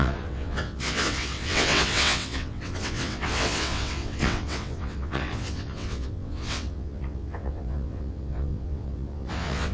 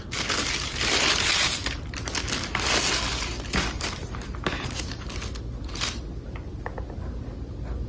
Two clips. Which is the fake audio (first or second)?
first